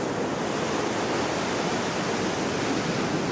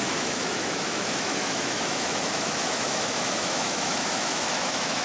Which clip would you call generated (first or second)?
second